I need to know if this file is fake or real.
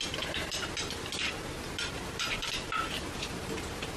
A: real